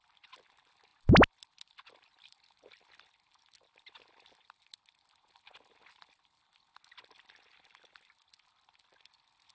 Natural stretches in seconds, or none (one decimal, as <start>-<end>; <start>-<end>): 0.0-9.5